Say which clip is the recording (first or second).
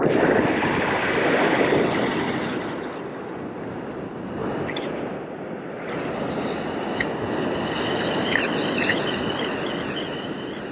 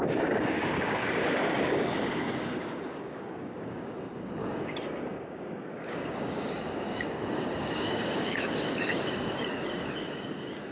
first